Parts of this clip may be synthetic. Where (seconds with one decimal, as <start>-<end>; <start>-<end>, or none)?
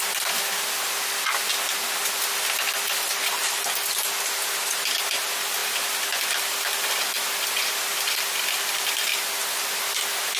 none